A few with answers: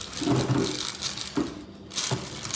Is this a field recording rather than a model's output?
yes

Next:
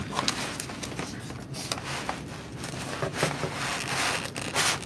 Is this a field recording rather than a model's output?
yes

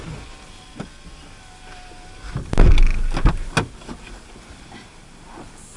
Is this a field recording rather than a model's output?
yes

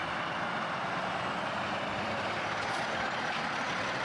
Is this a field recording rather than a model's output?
yes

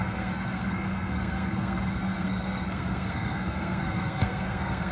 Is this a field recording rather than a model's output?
no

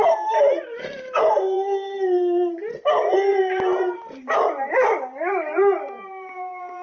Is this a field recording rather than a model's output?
no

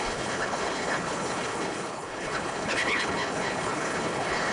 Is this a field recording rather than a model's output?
no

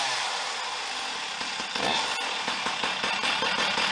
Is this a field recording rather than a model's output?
yes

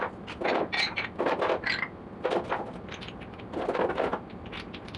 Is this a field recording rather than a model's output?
yes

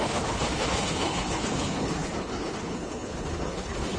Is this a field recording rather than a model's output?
no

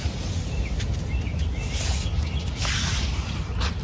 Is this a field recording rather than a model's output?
yes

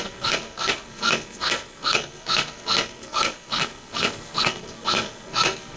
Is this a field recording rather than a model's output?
no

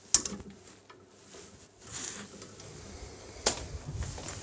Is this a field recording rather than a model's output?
yes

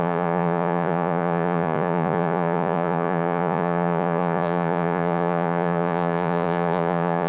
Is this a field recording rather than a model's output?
no